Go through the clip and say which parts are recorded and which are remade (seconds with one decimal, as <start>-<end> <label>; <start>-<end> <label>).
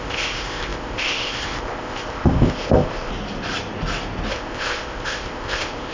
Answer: 0.0-3.1 remade; 3.1-4.3 recorded; 4.3-5.9 remade